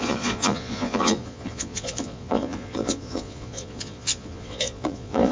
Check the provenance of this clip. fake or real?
fake